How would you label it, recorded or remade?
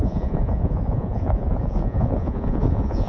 remade